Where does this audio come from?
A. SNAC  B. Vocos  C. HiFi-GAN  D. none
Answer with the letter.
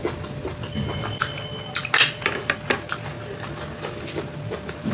D